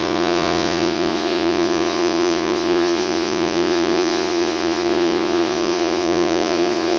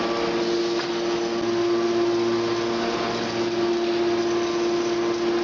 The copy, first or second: first